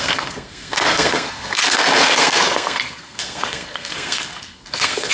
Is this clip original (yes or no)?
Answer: no